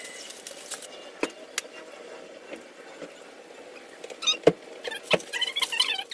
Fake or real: real